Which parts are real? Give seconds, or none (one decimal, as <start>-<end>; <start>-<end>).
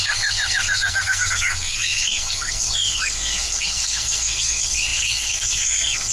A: none